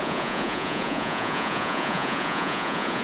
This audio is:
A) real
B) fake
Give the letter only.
B